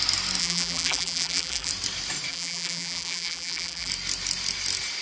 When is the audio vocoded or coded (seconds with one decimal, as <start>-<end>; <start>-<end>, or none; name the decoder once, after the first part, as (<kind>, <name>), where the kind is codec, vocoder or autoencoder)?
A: 0.4-1.7 (vocoder, BigVGAN v2); 2.3-3.9